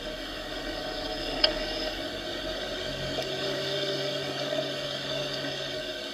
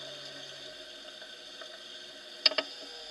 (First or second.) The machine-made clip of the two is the first